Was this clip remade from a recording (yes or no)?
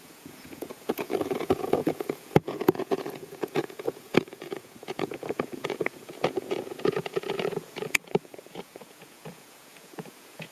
yes